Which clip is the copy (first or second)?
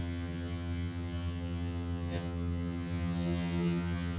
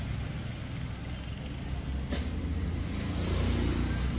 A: first